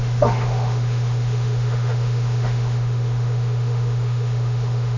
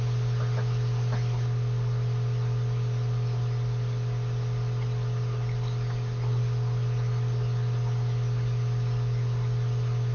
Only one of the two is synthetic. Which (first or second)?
first